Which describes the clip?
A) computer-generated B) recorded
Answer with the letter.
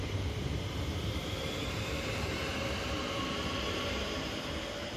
A